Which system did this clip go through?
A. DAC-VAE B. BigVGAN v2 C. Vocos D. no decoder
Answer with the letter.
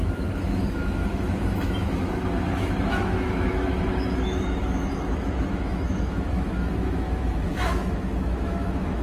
A